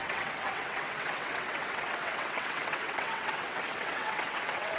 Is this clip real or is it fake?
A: fake